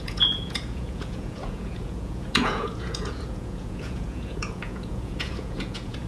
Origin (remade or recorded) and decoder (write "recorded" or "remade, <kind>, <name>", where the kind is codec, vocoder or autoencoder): remade, vocoder, Vocos